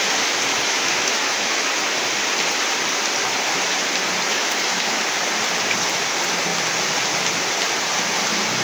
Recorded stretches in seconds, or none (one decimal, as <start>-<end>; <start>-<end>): 0.0-0.5; 1.7-4.3; 5.0-8.6